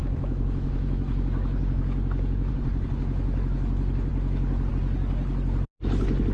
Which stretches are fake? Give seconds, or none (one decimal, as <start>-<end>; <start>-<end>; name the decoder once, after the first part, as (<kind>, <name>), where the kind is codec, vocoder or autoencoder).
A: 0.0-2.5 (autoencoder, DAC-VAE)